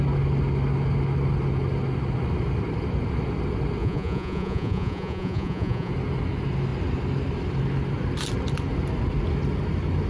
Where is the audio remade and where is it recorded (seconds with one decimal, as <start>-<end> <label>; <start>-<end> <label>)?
0.0-3.8 recorded; 3.8-5.9 remade; 5.9-10.1 recorded

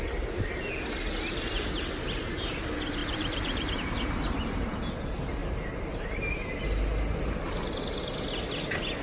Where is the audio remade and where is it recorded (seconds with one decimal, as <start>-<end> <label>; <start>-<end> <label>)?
0.0-3.0 recorded; 3.0-4.9 remade; 4.9-5.4 recorded; 5.4-6.6 remade; 6.6-9.0 recorded